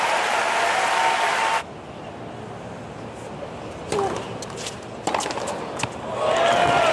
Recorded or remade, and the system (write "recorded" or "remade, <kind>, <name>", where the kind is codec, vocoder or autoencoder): recorded